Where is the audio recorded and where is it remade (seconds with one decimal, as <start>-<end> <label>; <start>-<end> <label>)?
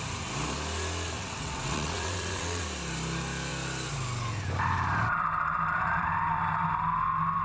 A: 0.0-1.2 recorded; 1.2-2.6 remade; 2.6-7.4 recorded